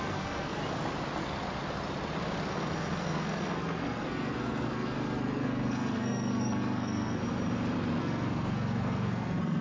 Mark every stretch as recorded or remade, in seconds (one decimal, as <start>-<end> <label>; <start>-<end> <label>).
0.0-0.6 remade; 0.6-2.5 recorded; 2.5-7.2 remade; 7.2-8.0 recorded; 8.0-9.6 remade